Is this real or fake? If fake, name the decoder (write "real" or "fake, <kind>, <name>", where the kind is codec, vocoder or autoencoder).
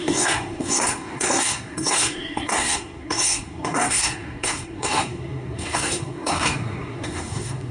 fake, codec, SNAC